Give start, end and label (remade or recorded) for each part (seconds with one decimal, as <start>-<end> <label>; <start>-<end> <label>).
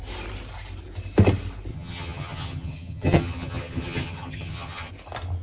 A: 0.0-1.7 recorded; 1.7-4.9 remade; 4.9-5.4 recorded